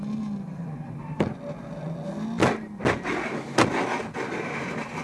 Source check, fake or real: real